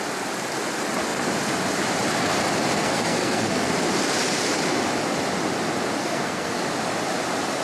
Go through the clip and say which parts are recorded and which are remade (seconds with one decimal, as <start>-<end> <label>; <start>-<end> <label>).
0.0-2.8 recorded; 2.8-3.7 remade; 3.7-6.0 recorded; 6.0-6.6 remade; 6.6-7.6 recorded